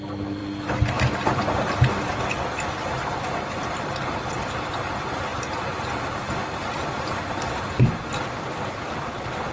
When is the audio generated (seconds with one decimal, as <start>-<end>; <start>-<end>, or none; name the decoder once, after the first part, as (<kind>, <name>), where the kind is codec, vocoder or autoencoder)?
none